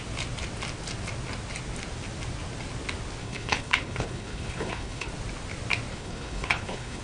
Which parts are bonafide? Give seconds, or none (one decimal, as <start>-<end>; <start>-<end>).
0.0-3.2; 5.1-5.9